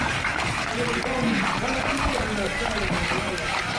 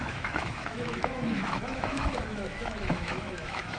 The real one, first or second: first